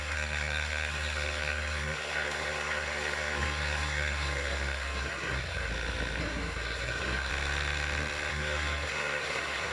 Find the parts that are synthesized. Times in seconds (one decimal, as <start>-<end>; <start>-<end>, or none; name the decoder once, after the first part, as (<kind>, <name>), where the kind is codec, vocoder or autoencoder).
0.0-5.7 (codec, SNAC); 6.2-7.3; 8.3-9.7